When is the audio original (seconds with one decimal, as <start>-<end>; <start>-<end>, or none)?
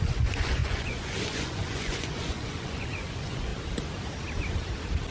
3.5-5.1